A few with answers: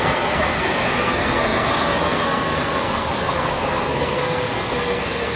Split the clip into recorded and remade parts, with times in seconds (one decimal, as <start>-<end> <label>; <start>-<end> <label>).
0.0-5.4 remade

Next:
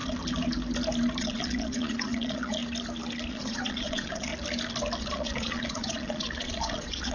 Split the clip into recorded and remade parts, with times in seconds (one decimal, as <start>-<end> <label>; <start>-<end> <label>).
0.0-1.2 recorded; 1.2-2.6 remade; 2.6-3.3 recorded; 3.3-4.3 remade; 4.3-5.0 recorded; 5.0-7.1 remade

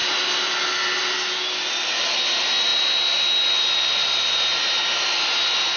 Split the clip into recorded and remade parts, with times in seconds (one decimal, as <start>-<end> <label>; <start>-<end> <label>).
0.0-5.8 recorded

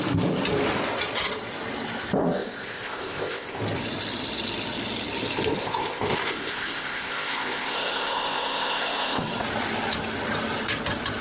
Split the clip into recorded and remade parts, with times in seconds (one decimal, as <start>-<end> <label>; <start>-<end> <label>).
0.0-2.2 recorded; 2.2-3.6 remade; 3.6-5.6 recorded; 5.6-9.2 remade; 9.2-11.2 recorded

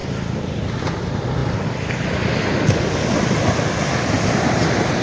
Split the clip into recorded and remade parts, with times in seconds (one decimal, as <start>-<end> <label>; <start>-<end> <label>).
0.0-5.0 recorded

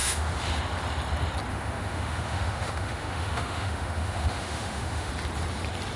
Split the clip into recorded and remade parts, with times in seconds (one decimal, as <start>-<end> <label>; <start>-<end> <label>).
0.0-0.6 remade; 0.6-1.5 recorded; 1.5-5.1 remade; 5.1-6.0 recorded